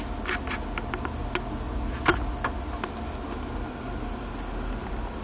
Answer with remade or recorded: recorded